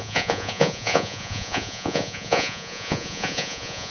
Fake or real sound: fake